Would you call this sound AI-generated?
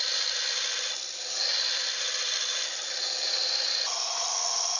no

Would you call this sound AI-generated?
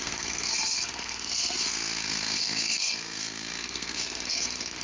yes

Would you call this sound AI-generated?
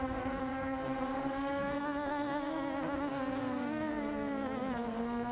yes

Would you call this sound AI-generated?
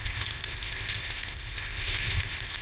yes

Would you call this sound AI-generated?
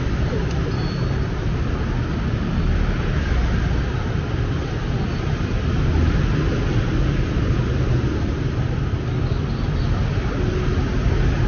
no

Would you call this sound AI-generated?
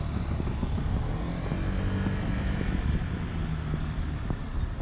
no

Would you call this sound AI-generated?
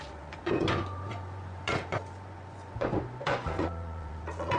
yes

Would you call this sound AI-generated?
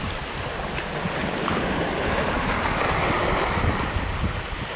no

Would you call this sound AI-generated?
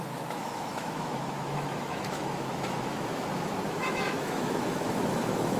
yes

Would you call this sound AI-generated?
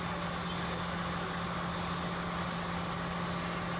no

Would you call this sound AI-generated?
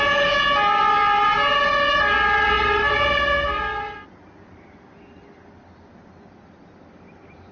no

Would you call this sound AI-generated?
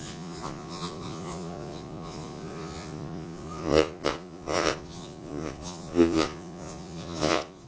yes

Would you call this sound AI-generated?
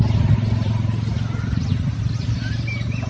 no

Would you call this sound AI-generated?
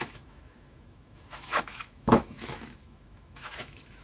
yes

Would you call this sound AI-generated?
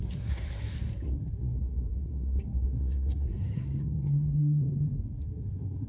yes